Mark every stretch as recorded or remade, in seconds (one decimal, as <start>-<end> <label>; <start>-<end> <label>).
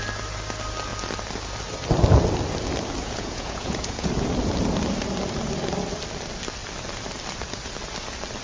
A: 0.0-3.0 recorded; 3.0-4.1 remade; 4.1-8.4 recorded